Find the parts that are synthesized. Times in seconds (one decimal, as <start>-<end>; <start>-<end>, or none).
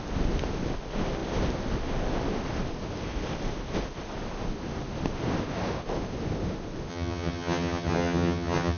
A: 6.9-8.8